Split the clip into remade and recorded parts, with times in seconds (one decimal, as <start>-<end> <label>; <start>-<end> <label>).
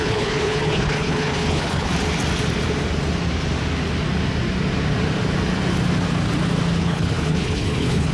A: 0.0-1.9 remade; 1.9-6.8 recorded; 6.8-8.1 remade